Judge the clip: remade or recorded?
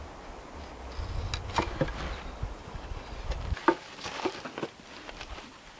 recorded